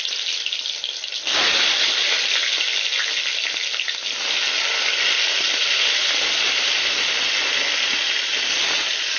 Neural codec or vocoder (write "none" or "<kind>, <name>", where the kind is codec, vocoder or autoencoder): none